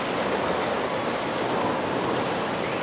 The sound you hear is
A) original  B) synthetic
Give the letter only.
A